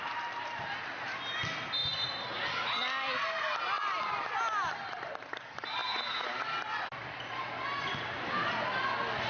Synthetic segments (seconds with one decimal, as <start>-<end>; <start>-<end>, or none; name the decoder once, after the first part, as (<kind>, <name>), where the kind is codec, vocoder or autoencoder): none